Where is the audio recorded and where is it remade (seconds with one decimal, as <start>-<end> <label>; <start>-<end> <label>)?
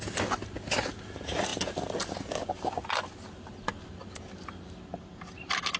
0.0-5.8 recorded